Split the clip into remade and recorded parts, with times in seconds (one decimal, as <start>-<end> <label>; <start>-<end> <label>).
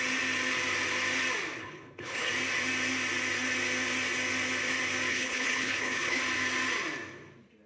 0.0-1.6 recorded; 1.6-2.3 remade; 2.3-5.1 recorded; 5.1-6.2 remade; 6.2-7.7 recorded